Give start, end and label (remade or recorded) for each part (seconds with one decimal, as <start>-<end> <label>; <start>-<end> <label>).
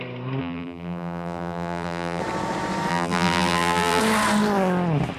0.0-0.4 recorded; 0.4-2.2 remade; 2.2-2.9 recorded; 2.9-4.0 remade; 4.0-5.2 recorded